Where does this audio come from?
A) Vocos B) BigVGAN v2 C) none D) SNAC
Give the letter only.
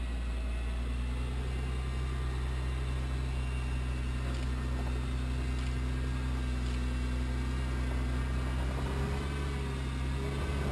C